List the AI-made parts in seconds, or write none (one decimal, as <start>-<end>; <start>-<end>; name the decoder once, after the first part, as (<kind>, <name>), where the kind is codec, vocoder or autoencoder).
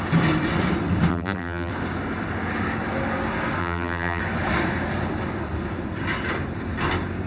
1.1-1.7 (vocoder, BigVGAN v2); 3.6-4.2